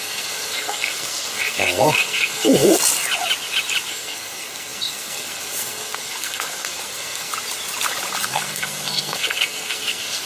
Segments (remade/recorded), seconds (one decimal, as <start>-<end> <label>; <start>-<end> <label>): 0.0-2.8 remade; 2.8-3.9 recorded; 3.9-7.3 remade; 7.3-8.2 recorded; 8.2-10.3 remade

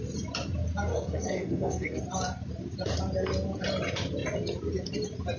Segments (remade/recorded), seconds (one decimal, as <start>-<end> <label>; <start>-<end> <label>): 0.0-0.9 recorded; 0.9-2.0 remade; 2.0-5.4 recorded

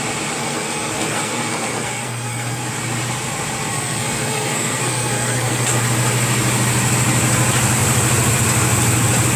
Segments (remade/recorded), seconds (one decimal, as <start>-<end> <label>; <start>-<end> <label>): 0.0-0.4 recorded; 0.4-2.7 remade; 2.7-3.7 recorded; 3.7-5.7 remade; 5.7-9.4 recorded

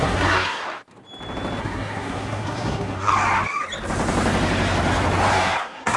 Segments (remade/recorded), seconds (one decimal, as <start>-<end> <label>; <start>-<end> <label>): 0.0-0.6 remade; 0.6-1.6 recorded; 1.6-3.1 remade; 3.1-5.3 recorded; 5.3-6.0 remade

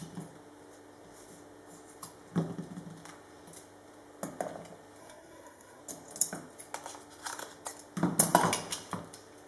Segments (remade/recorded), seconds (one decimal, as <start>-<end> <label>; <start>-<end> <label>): 0.0-5.0 recorded; 5.0-5.8 remade; 5.8-9.5 recorded